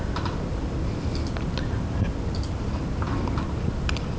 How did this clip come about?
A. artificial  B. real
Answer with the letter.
B